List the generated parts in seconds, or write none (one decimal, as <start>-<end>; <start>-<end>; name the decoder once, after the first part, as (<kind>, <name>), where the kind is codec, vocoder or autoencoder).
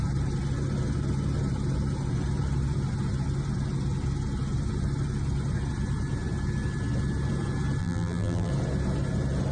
7.8-8.5 (vocoder, BigVGAN v2)